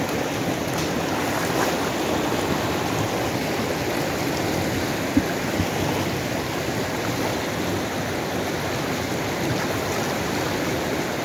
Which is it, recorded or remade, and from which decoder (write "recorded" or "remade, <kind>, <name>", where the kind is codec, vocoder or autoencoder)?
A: recorded